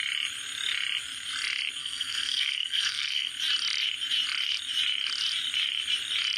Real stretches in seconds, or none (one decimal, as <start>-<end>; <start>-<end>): 0.0-1.8; 3.3-6.4